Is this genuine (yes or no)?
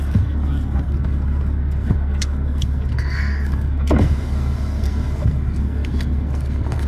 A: no